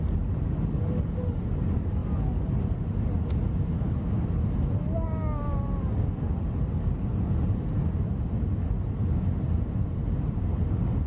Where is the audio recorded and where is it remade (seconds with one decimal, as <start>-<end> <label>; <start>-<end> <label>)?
0.0-11.1 recorded